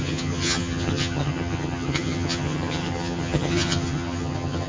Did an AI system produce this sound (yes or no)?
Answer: yes